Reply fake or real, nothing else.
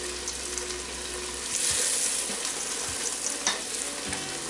real